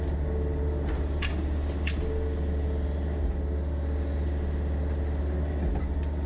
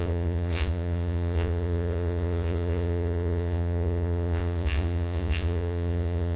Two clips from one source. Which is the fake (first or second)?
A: second